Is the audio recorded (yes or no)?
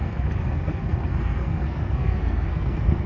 no